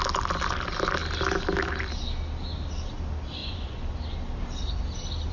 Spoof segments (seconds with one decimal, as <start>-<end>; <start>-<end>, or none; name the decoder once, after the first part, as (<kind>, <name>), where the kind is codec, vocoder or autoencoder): 3.4-3.9 (vocoder, Vocos)